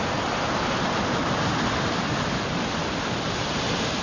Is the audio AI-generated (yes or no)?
no